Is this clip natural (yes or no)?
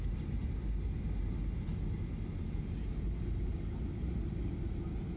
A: yes